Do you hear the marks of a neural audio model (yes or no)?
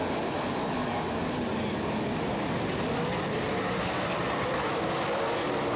no